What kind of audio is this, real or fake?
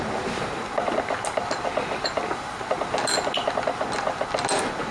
real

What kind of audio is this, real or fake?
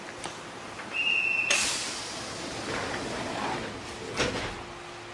real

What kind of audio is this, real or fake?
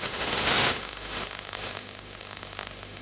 fake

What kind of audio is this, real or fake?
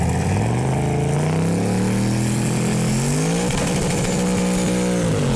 real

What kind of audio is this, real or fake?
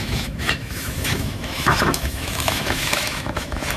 fake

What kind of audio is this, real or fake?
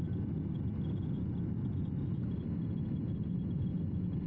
real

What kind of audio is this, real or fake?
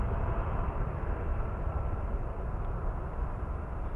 real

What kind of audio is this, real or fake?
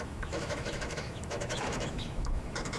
fake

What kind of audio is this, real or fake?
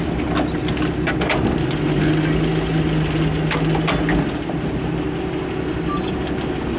real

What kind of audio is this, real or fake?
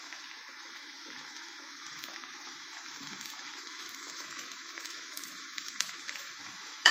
fake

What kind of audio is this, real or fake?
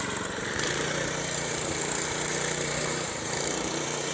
fake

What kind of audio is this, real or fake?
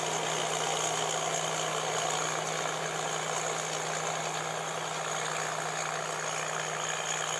real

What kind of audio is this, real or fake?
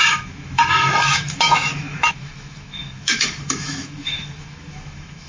fake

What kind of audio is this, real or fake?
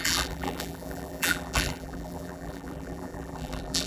fake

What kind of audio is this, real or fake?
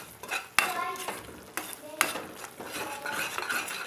real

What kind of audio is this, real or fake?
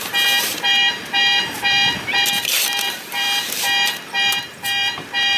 fake